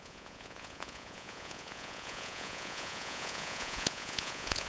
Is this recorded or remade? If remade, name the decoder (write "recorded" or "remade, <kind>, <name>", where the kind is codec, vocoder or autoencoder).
remade, vocoder, Vocos